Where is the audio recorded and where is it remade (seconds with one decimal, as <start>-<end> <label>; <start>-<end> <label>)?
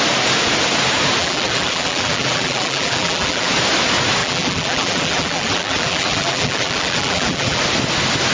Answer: 0.0-1.2 recorded; 1.2-3.5 remade; 3.5-4.2 recorded; 4.2-7.6 remade; 7.6-8.3 recorded